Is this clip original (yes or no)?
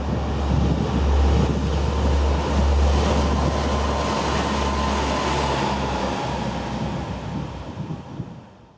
yes